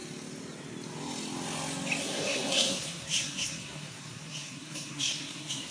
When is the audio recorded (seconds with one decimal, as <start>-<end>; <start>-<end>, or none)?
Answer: 0.0-2.0